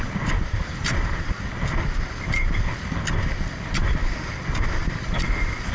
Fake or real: real